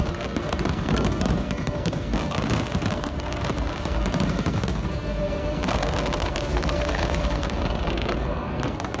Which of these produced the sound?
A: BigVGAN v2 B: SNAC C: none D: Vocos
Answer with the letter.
B